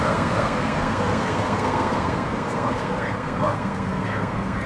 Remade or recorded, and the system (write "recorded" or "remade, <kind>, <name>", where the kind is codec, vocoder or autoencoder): remade, codec, SNAC